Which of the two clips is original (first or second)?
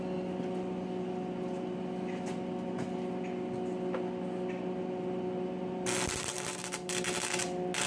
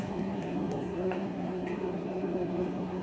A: first